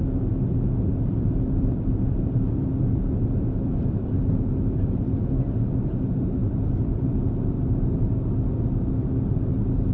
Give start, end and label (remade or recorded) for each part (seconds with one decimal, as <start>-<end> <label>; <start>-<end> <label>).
0.0-0.9 recorded; 0.9-5.5 remade; 5.5-6.4 recorded; 6.4-8.1 remade; 8.1-9.9 recorded